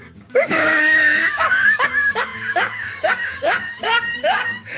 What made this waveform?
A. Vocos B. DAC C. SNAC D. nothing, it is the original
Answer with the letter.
B